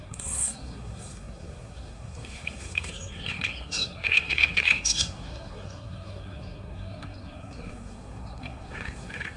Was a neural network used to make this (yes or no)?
yes